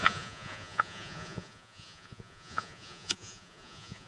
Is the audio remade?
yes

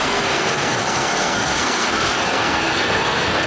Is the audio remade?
yes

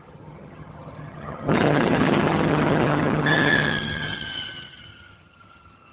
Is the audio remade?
yes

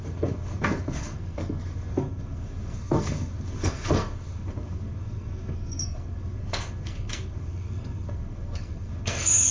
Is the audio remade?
yes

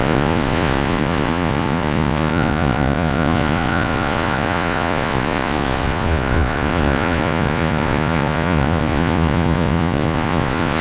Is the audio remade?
yes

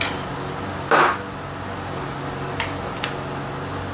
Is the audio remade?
no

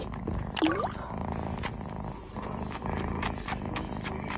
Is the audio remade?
no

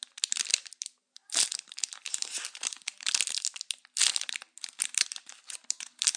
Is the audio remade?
no